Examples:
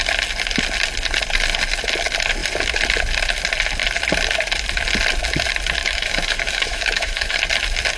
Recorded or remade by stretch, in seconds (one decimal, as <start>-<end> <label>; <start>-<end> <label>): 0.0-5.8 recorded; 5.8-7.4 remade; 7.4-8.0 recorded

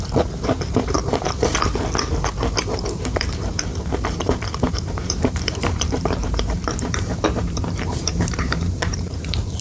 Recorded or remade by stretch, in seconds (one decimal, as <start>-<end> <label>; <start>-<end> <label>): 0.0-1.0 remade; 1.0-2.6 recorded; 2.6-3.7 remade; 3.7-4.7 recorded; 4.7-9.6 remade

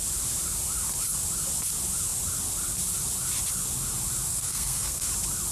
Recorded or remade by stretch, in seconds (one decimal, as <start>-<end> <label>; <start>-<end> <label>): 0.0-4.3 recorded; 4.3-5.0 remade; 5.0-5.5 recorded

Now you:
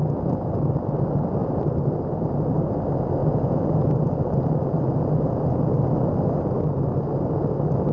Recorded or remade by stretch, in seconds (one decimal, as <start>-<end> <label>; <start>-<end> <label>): 0.0-7.9 recorded

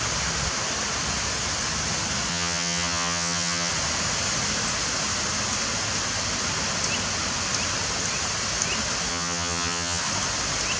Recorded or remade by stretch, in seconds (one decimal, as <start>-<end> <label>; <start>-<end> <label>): 0.0-2.3 recorded; 2.3-3.7 remade; 3.7-9.1 recorded; 9.1-10.0 remade; 10.0-10.8 recorded

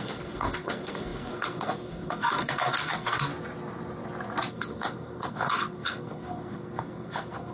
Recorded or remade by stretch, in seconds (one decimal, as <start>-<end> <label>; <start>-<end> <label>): 0.0-3.3 remade; 3.3-4.5 recorded; 4.5-7.5 remade